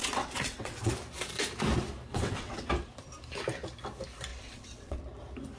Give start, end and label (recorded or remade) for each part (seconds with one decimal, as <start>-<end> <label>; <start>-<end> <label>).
0.0-0.9 remade; 0.9-2.1 recorded; 2.1-2.7 remade; 2.7-4.3 recorded; 4.3-5.0 remade; 5.0-5.6 recorded